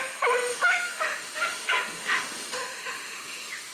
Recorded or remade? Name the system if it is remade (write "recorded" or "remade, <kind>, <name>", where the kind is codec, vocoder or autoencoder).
remade, autoencoder, DAC-VAE